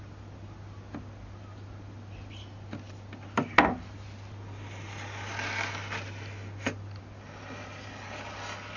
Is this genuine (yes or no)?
yes